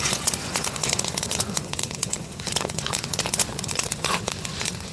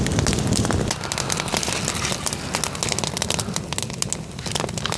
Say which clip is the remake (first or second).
first